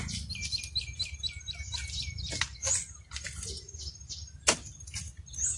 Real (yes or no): yes